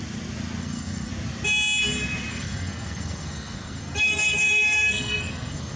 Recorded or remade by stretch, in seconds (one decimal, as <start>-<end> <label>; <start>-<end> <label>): 0.0-0.6 recorded; 0.6-1.1 remade; 1.1-2.3 recorded; 2.3-5.8 remade